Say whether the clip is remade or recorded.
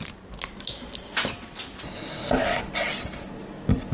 recorded